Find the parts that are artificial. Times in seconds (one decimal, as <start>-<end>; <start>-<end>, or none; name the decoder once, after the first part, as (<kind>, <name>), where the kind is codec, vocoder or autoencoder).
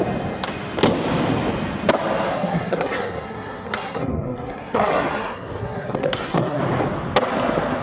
2.3-6.6 (codec, SNAC)